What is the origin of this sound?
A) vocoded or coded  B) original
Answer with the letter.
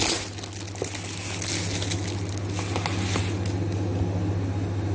B